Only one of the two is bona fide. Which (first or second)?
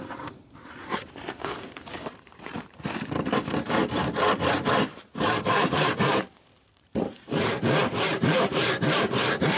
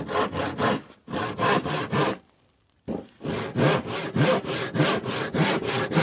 second